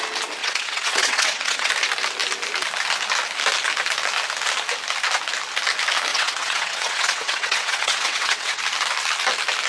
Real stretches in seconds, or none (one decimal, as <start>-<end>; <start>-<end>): 0.0-0.4; 1.7-6.1; 8.6-9.7